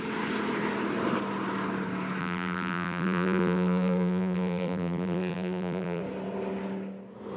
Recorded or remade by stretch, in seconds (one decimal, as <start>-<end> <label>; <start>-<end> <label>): 0.0-2.2 recorded; 2.2-6.0 remade; 6.0-7.4 recorded